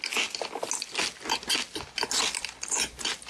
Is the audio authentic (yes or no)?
yes